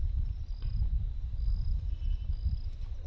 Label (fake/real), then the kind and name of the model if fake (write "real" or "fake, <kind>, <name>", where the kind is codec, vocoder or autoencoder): real